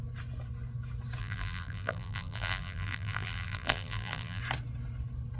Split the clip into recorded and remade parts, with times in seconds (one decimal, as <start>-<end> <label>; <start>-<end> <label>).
0.0-1.2 recorded; 1.2-4.4 remade; 4.4-5.4 recorded